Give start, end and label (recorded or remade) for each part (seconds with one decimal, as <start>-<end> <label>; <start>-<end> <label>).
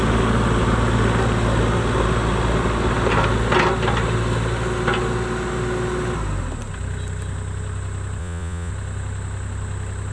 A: 0.0-8.2 recorded; 8.2-8.7 remade; 8.7-10.1 recorded